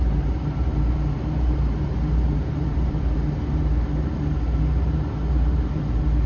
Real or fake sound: fake